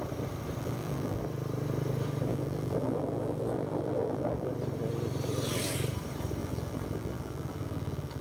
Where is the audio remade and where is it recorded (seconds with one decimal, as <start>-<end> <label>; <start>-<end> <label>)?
0.0-0.6 recorded; 0.6-1.2 remade; 1.2-2.3 recorded; 2.3-4.5 remade; 4.5-6.4 recorded; 6.4-8.2 remade